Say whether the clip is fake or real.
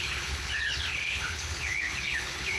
fake